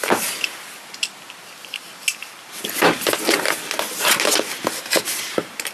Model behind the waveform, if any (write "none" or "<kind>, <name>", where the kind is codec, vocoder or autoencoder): none